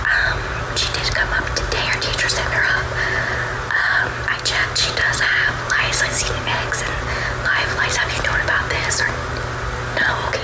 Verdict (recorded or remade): recorded